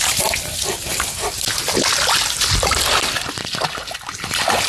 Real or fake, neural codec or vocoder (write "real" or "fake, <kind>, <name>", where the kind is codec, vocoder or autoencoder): real